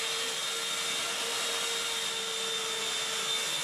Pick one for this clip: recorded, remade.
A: recorded